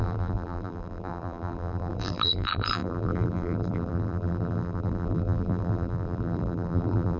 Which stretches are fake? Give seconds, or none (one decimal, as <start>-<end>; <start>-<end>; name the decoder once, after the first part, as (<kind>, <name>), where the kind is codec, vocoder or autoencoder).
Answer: 0.0-7.2 (vocoder, BigVGAN v2)